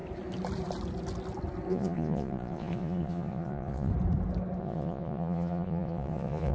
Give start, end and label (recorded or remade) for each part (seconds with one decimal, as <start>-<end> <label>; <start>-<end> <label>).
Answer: 0.0-1.7 recorded; 1.7-3.9 remade; 3.9-4.6 recorded; 4.6-6.5 remade